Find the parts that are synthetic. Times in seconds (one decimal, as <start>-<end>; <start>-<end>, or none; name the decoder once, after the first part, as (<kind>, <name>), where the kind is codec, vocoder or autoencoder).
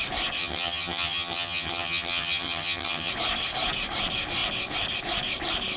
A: 0.4-3.1 (vocoder, HiFi-GAN)